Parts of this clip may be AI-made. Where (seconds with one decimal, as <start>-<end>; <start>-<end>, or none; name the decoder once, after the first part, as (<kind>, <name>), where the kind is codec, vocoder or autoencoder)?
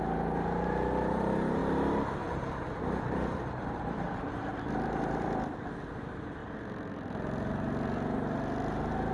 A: 1.6-5.7 (vocoder, BigVGAN v2)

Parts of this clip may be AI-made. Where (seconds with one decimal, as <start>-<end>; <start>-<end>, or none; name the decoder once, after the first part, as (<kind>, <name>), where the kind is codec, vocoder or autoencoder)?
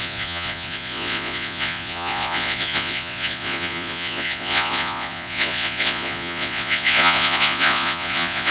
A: 0.0-8.5 (vocoder, Vocos)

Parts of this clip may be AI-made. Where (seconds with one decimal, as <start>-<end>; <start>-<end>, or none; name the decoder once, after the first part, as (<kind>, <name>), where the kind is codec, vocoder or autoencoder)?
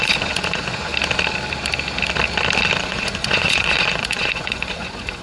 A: 0.0-0.9 (vocoder, Vocos); 2.8-5.2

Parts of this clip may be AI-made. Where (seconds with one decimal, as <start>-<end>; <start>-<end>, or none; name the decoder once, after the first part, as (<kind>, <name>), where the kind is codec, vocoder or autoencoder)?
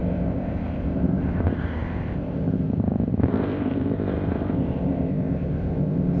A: 0.0-6.2 (codec, ZipCodec)